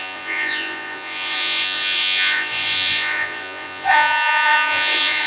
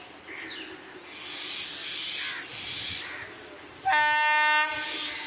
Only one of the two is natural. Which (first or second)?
second